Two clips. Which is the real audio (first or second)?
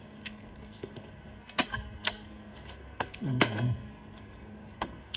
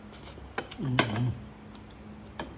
second